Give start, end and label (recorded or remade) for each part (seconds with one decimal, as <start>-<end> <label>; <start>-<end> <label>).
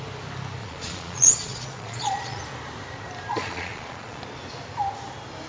0.0-0.6 recorded; 0.6-2.4 remade; 2.4-3.3 recorded; 3.3-4.2 remade; 4.2-5.5 recorded